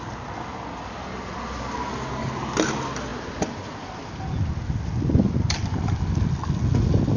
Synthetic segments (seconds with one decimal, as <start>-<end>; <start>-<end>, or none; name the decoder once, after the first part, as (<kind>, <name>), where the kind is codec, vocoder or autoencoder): none